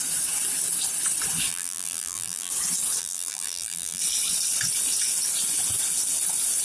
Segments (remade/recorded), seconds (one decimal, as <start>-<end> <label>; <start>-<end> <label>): 0.0-1.5 recorded; 1.5-2.5 remade; 2.5-3.0 recorded; 3.0-4.0 remade; 4.0-6.6 recorded